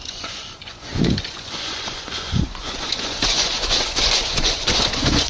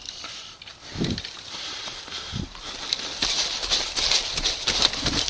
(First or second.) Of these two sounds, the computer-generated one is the first